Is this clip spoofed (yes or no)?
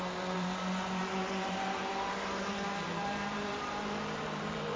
yes